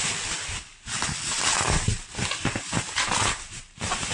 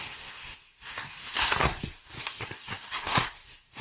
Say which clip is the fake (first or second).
second